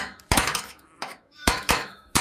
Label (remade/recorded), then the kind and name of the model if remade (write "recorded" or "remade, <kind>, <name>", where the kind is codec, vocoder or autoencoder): remade, autoencoder, DAC-VAE